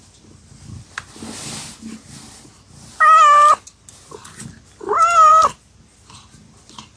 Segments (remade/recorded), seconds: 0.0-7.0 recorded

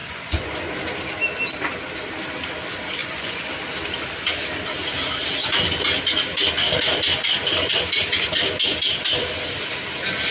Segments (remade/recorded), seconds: 0.0-0.7 remade; 0.7-3.0 recorded; 3.0-3.5 remade; 3.5-10.3 recorded